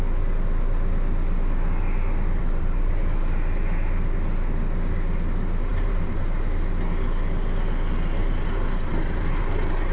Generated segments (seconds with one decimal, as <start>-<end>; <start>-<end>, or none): 2.4-2.9; 5.7-6.2; 8.2-9.9